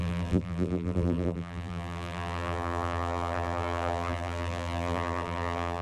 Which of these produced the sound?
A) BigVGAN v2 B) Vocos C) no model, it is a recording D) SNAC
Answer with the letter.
A